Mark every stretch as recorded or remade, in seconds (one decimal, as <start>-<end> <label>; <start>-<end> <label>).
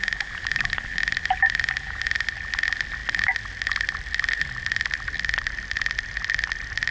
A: 0.0-3.0 recorded; 3.0-6.9 remade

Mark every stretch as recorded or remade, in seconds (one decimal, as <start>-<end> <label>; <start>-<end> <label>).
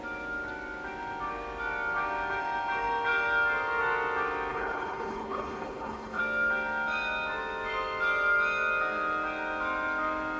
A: 0.0-4.5 recorded; 4.5-6.2 remade; 6.2-10.4 recorded